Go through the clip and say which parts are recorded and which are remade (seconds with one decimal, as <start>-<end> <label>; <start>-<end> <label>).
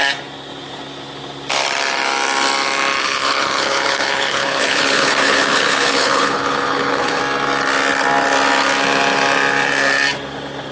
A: 0.0-3.0 recorded; 3.0-7.2 remade; 7.2-10.7 recorded